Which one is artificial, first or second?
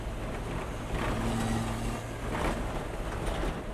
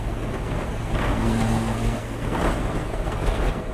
second